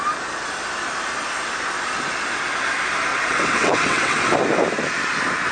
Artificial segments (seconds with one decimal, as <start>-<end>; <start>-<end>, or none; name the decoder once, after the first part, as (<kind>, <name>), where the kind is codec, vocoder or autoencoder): 3.1-4.2 (vocoder, WaveNeXt)